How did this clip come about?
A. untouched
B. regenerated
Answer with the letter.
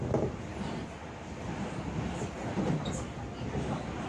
A